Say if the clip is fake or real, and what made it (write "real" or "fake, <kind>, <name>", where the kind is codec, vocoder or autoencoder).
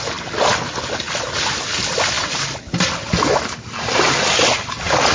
real